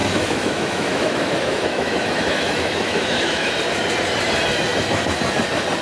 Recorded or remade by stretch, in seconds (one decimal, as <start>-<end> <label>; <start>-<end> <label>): 0.0-3.5 remade; 3.5-5.8 recorded